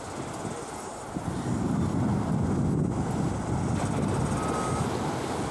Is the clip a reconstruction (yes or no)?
no